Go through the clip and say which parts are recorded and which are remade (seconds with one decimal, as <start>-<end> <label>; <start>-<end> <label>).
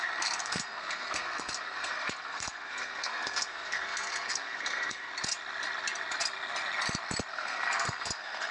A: 0.0-5.1 remade; 5.1-7.3 recorded; 7.3-8.5 remade